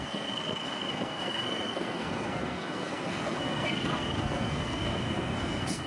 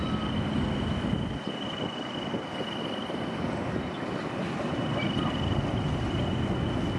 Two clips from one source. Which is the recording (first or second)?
second